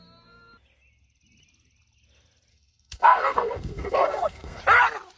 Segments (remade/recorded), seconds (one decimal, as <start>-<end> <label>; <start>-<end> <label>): 0.0-2.5 recorded; 2.5-4.6 remade; 4.6-5.2 recorded